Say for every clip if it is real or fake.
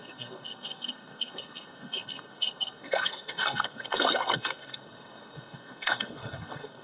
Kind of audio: fake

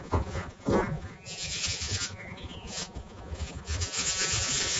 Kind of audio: fake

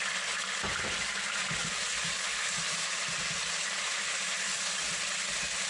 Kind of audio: real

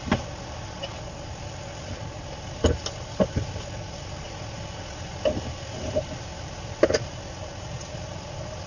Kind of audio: fake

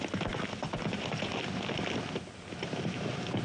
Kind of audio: real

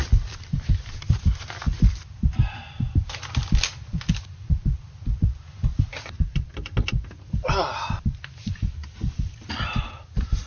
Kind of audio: real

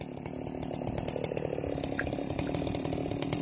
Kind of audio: real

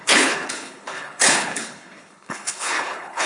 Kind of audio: fake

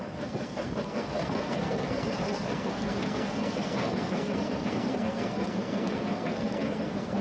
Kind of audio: fake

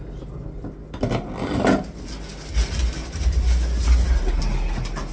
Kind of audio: real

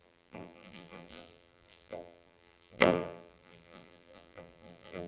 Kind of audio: fake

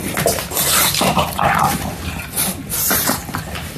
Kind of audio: real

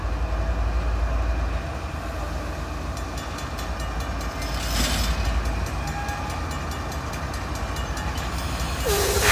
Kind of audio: real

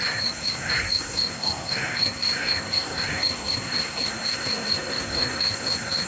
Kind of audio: fake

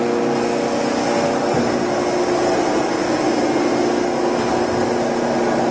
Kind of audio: real